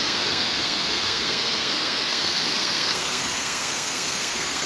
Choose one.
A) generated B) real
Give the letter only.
A